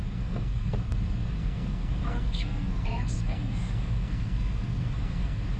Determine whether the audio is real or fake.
fake